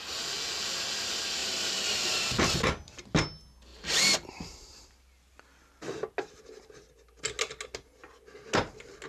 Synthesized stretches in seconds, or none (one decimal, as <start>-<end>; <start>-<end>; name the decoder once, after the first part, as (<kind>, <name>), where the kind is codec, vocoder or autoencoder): 1.4-2.3 (vocoder, BigVGAN v2); 3.7-4.7